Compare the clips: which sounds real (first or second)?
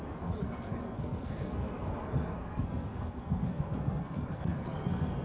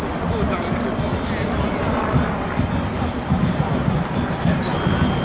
second